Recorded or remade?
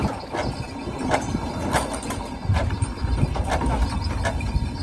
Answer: recorded